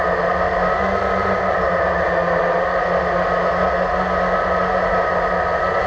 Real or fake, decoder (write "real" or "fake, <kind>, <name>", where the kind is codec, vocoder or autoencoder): real